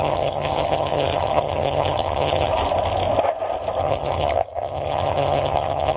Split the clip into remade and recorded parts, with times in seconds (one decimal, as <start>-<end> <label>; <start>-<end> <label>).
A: 0.0-2.5 remade; 2.5-3.8 recorded; 3.8-6.0 remade